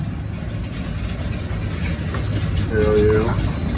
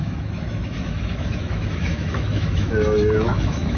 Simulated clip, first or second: second